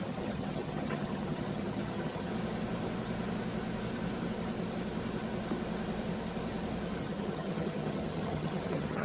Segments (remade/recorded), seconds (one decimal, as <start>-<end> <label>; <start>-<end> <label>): 0.0-2.3 remade; 2.3-7.0 recorded; 7.0-9.0 remade